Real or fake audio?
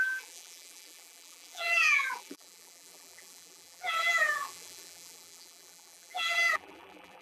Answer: fake